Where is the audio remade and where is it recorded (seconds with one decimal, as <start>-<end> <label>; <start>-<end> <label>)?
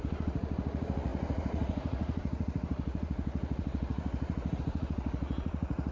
0.0-5.9 remade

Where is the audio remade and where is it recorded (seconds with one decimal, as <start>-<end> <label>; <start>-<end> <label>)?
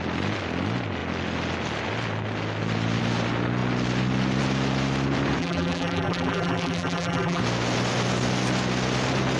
0.0-5.4 recorded; 5.4-7.4 remade; 7.4-9.4 recorded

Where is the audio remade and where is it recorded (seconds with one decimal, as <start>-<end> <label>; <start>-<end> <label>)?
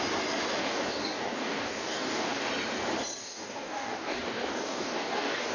0.0-0.6 recorded; 0.6-2.5 remade; 2.5-3.2 recorded; 3.2-5.5 remade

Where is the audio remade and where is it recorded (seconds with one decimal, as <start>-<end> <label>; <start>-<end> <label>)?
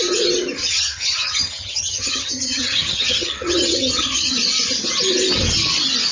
0.0-0.6 recorded; 0.6-4.3 remade; 4.3-6.1 recorded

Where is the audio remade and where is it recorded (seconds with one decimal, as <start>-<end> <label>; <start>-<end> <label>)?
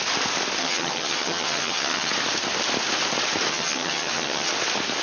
0.0-0.6 recorded; 0.6-2.1 remade; 2.1-3.5 recorded; 3.5-4.5 remade; 4.5-5.0 recorded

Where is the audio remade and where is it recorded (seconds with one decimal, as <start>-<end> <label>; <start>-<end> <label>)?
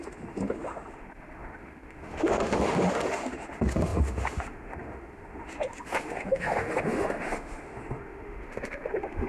0.0-9.3 remade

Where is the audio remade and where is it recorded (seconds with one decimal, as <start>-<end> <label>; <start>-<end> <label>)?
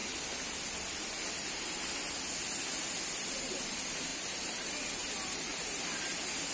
0.0-4.1 recorded; 4.1-4.7 remade; 4.7-6.5 recorded